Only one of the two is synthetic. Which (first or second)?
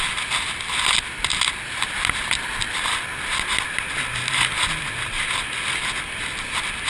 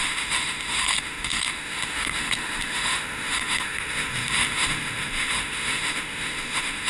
second